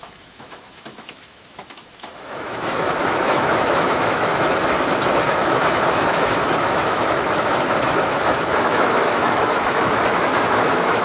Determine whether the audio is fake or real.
fake